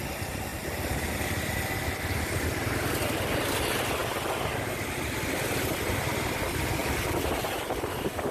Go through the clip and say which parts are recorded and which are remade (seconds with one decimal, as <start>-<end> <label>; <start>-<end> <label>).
0.0-0.5 recorded; 0.5-1.5 remade; 1.5-6.8 recorded; 6.8-8.3 remade